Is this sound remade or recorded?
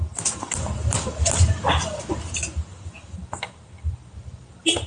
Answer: recorded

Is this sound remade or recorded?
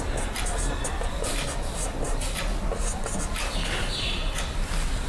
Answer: recorded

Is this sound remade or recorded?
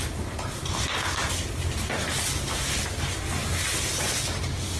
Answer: recorded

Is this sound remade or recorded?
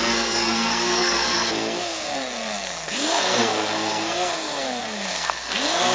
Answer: remade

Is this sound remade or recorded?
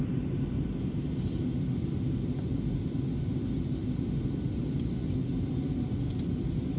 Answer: recorded